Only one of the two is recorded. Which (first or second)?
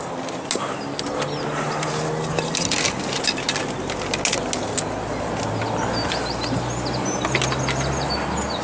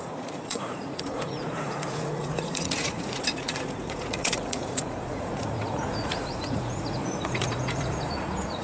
first